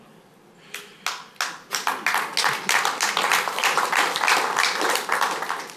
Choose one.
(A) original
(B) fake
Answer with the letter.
A